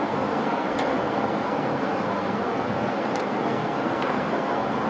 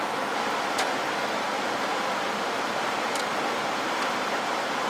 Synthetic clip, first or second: first